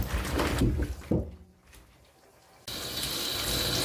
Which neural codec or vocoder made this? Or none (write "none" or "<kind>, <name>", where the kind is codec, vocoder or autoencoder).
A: none